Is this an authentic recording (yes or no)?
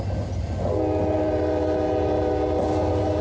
yes